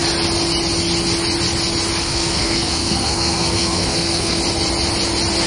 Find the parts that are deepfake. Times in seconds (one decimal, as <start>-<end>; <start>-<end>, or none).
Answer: 2.0-4.4